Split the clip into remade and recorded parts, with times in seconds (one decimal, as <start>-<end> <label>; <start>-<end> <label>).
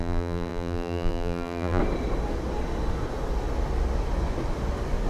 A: 0.0-1.8 remade; 1.8-5.1 recorded